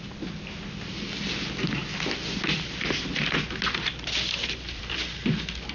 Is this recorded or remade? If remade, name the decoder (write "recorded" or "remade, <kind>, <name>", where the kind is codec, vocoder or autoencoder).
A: recorded